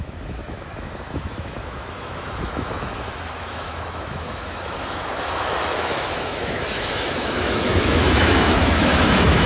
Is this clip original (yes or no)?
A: no